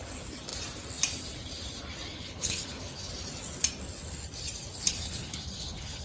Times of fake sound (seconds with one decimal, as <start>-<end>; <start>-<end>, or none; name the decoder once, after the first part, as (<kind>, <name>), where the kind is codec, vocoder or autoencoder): 2.1-3.1 (codec, HILCodec); 4.7-6.0